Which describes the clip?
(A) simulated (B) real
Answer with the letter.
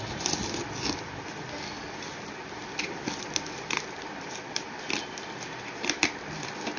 B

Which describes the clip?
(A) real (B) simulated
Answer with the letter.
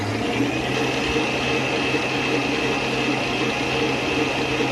A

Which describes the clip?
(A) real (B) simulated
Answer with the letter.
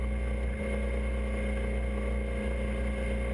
A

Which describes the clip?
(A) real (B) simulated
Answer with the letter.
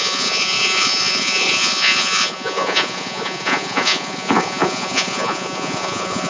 B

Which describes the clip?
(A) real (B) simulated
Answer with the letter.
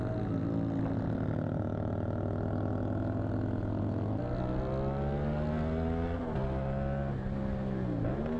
A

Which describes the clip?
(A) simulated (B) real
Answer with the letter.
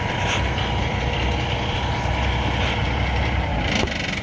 B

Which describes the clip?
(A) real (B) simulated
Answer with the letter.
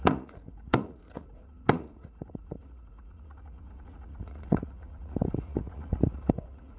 B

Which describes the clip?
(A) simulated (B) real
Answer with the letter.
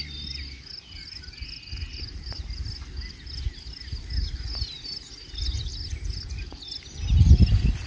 B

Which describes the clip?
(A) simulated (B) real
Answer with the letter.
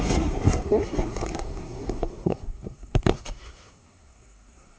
A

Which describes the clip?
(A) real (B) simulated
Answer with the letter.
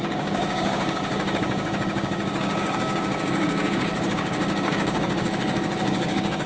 B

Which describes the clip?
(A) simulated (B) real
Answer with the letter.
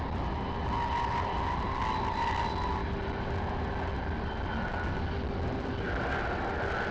B